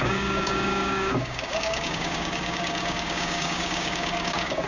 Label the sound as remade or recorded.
remade